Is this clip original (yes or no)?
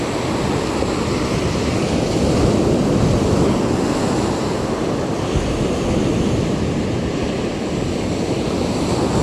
yes